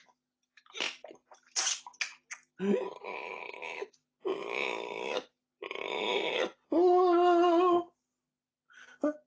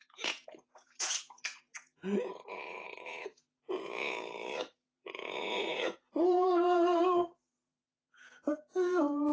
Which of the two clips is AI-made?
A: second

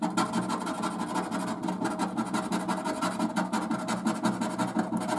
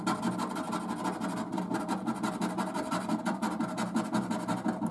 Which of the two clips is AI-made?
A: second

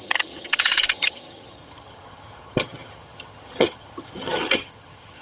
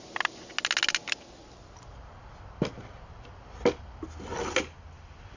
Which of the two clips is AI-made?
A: first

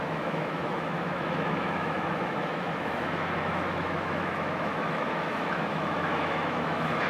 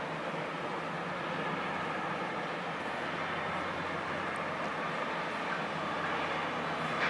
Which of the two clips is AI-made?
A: first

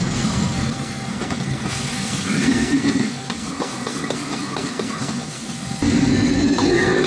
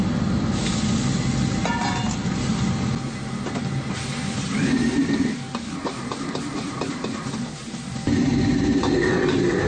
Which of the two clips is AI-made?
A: first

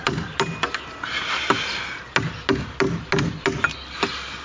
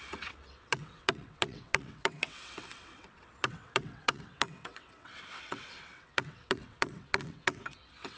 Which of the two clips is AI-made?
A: second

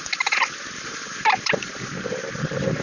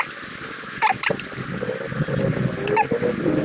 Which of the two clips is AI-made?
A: first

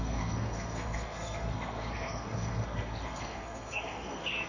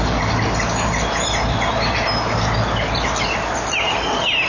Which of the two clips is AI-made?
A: first